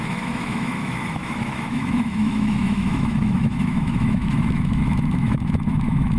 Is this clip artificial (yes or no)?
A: yes